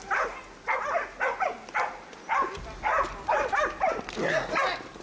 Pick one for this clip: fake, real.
real